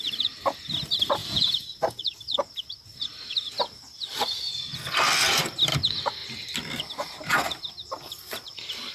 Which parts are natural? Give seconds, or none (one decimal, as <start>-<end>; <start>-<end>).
0.0-1.2; 2.0-8.9